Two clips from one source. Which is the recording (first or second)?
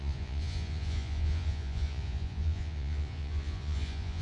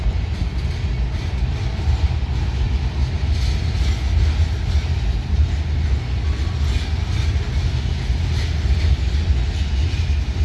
second